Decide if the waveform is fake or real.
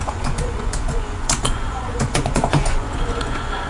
fake